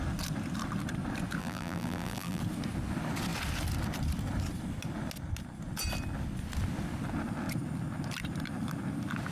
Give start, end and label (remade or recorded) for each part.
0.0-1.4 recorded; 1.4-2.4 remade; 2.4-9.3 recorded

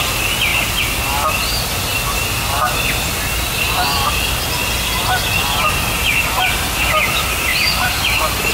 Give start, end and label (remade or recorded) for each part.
0.0-7.5 recorded; 7.5-8.0 remade; 8.0-8.5 recorded